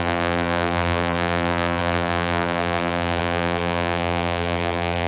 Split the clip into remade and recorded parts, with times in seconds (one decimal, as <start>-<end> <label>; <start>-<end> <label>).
0.0-5.1 remade